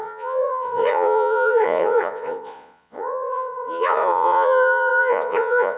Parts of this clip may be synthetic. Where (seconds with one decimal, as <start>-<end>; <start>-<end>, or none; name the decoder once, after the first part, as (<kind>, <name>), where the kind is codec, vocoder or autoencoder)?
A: 0.0-5.8 (vocoder, Vocos)